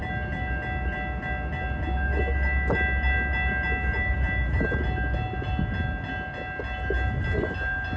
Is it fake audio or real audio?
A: real